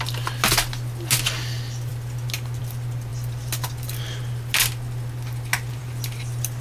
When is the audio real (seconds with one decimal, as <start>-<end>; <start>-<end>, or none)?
0.0-6.6